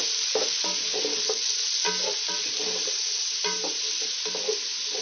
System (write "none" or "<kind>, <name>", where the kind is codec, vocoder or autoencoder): none